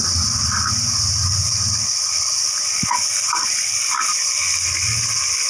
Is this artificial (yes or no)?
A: no